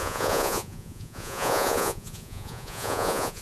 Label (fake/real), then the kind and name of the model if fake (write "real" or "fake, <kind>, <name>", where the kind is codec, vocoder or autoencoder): fake, vocoder, Vocos